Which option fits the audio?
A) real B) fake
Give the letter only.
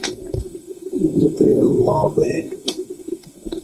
B